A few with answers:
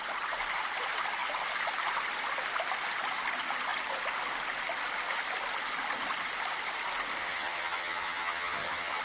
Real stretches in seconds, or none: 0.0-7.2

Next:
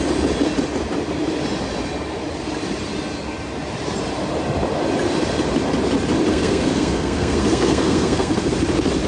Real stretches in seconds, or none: 0.0-6.3; 8.5-9.1

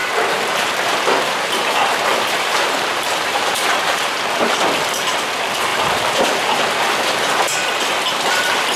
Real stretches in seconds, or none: 4.2-5.7; 6.6-8.8